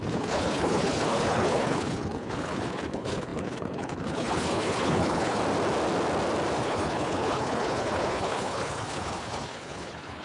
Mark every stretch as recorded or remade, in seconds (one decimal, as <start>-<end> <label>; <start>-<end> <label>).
0.0-5.4 remade; 5.4-6.6 recorded; 6.6-10.2 remade